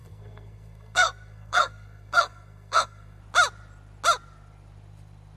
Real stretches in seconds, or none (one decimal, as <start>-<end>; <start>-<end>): 3.2-5.4